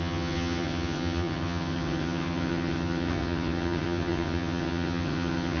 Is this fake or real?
fake